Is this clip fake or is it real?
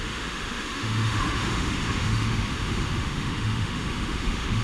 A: fake